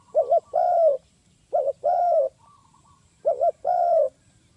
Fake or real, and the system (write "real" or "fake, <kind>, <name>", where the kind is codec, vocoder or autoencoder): fake, vocoder, BigVGAN v2